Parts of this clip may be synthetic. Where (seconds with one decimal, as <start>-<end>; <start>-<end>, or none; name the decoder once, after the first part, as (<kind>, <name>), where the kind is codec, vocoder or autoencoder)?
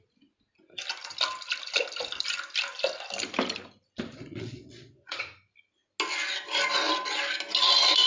4.1-5.3 (vocoder, Vocos)